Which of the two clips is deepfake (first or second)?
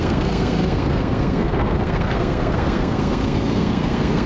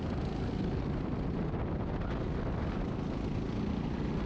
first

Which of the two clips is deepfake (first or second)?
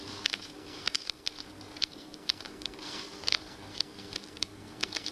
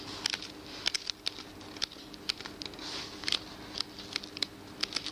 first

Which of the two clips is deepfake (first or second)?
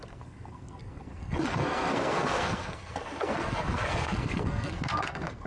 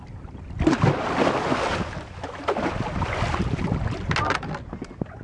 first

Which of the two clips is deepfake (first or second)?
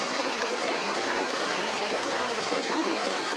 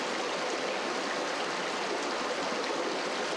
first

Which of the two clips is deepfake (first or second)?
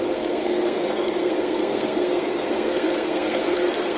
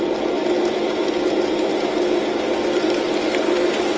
first